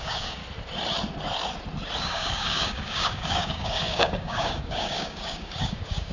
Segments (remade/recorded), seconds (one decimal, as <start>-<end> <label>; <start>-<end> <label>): 0.0-0.4 remade; 0.4-2.0 recorded; 2.0-6.1 remade